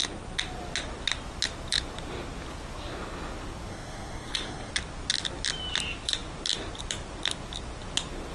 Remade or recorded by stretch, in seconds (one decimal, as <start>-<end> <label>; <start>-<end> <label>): 0.0-3.7 recorded; 3.7-4.7 remade; 4.7-8.3 recorded